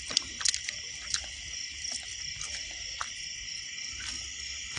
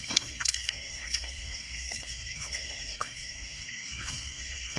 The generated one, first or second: second